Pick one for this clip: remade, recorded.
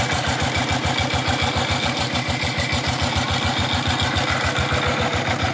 recorded